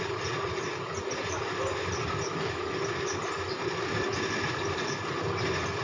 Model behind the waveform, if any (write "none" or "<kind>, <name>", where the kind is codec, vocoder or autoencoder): none